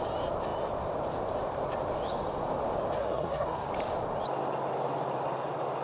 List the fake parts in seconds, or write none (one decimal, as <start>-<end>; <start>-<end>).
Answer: 3.0-3.7